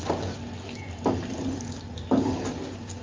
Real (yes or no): yes